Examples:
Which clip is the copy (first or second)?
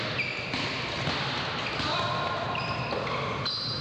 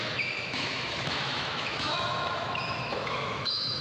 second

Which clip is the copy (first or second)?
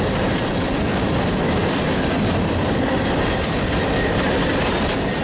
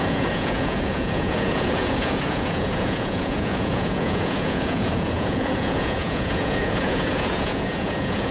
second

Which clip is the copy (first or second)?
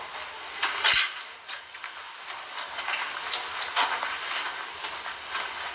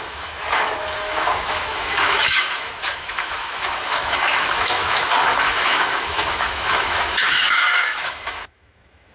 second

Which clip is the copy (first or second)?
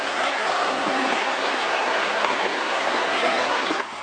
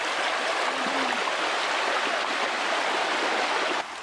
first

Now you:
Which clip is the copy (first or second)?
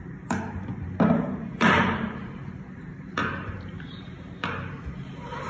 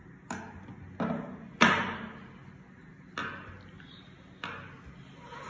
first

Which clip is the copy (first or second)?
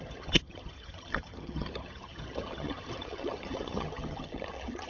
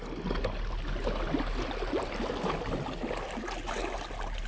first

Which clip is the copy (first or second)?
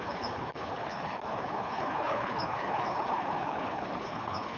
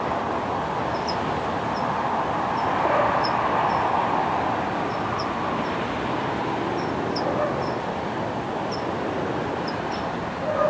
first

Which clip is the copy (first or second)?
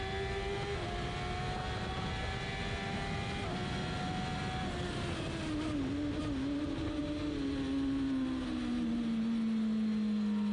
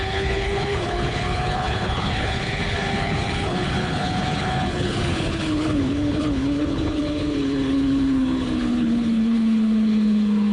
second